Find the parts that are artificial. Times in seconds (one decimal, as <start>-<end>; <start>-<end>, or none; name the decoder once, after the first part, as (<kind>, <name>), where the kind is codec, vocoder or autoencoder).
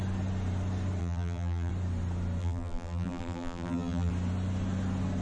1.0-1.7 (vocoder, BigVGAN v2); 2.4-4.1